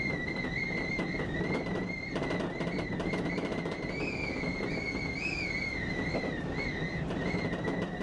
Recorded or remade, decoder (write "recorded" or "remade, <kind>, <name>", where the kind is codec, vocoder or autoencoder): recorded